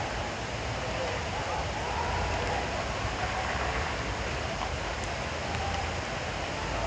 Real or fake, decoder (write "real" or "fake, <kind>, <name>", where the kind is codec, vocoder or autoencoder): real